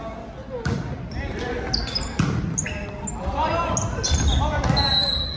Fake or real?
real